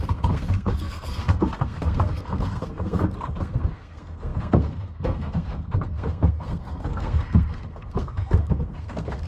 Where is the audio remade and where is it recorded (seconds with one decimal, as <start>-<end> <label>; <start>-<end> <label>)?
0.0-9.3 remade

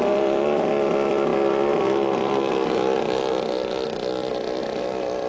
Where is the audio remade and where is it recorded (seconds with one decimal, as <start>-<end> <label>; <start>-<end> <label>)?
0.0-5.3 recorded

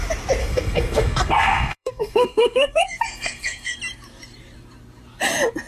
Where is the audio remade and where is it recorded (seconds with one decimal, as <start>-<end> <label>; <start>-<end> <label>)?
0.0-0.4 recorded; 0.4-3.8 remade; 3.8-5.7 recorded

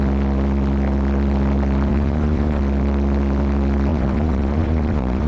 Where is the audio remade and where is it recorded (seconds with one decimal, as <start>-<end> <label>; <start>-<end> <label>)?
0.0-1.9 recorded; 1.9-2.6 remade; 2.6-3.9 recorded; 3.9-5.3 remade

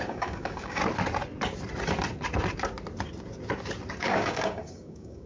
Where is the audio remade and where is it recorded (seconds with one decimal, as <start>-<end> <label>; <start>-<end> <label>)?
0.0-0.8 remade; 0.8-4.0 recorded; 4.0-5.3 remade

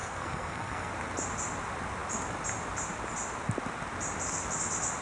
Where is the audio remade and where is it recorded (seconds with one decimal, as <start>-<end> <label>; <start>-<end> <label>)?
0.0-0.9 remade; 0.9-5.0 recorded